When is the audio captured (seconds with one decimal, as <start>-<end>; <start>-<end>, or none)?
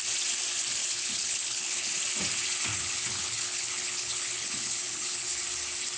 0.0-0.8; 1.9-2.7; 5.4-6.0